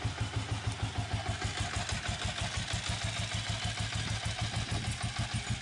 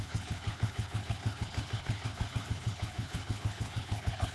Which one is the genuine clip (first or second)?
first